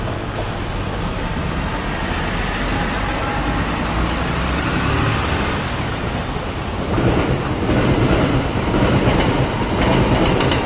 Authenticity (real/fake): real